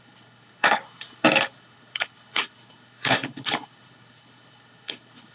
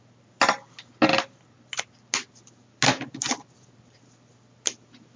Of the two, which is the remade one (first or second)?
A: first